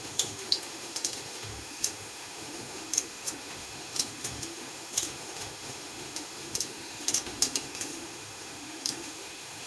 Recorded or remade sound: remade